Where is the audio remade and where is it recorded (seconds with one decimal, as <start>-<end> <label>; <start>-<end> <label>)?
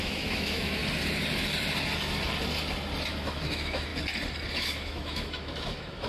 0.0-0.8 remade; 0.8-3.1 recorded; 3.1-3.9 remade; 3.9-4.5 recorded; 4.5-6.1 remade